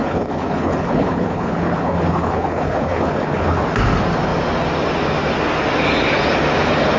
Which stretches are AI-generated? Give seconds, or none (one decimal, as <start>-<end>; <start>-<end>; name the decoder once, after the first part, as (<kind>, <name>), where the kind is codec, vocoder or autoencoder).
0.0-3.6 (codec, HILCodec)